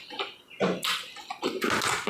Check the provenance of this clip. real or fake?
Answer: real